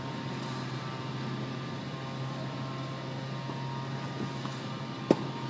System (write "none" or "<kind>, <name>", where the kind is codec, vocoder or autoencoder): none